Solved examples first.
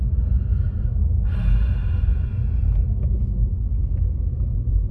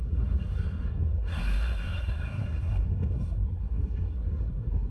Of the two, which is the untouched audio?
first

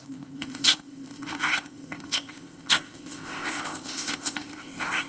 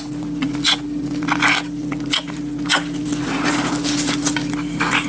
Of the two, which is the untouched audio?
second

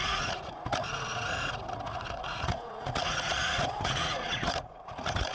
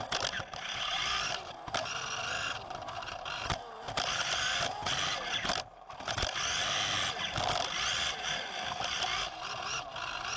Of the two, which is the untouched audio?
second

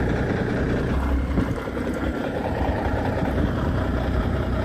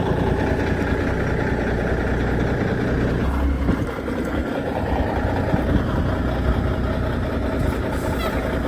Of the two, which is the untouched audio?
second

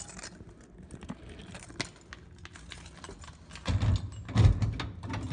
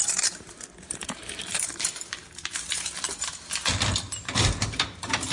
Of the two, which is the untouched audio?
first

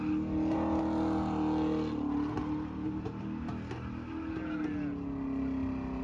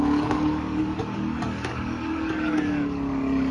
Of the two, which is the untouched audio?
first